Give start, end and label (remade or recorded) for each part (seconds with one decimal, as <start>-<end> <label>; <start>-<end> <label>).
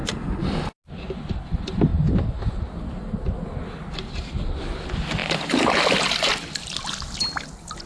0.0-7.9 recorded